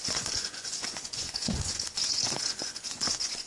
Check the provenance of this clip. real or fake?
fake